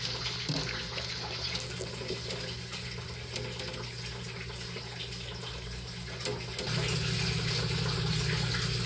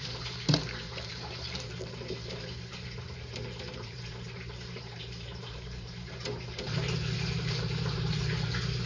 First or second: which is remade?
second